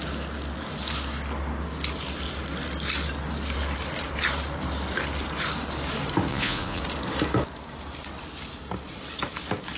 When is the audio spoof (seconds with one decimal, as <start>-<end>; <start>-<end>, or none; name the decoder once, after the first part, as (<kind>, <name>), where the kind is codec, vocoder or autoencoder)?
6.3-6.8 (vocoder, Vocos)